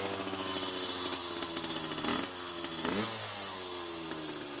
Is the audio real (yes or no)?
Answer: yes